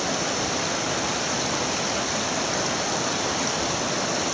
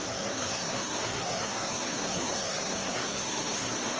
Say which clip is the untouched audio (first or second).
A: first